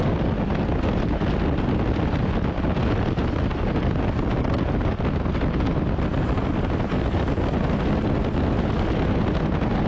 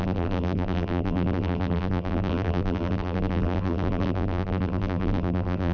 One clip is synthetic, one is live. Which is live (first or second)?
first